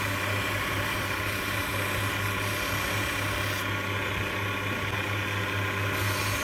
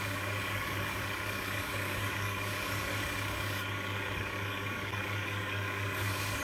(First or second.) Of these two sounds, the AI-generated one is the second